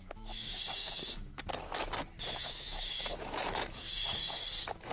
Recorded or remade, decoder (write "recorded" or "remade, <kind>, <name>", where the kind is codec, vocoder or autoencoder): remade, autoencoder, DAC-VAE